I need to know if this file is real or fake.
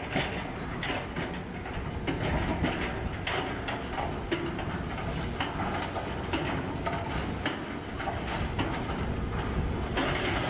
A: real